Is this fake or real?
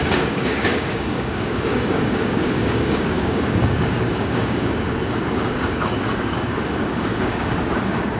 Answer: fake